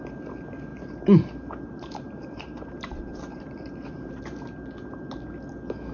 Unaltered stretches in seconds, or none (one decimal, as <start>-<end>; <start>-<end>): 0.0-0.7; 4.2-5.9